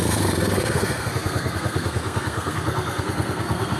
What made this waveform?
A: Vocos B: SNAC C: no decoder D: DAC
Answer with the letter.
B